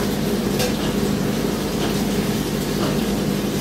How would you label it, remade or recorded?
recorded